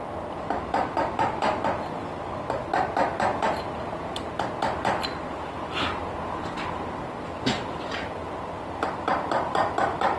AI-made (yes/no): no